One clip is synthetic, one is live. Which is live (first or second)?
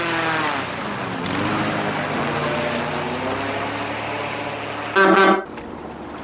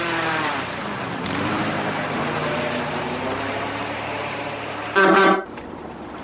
first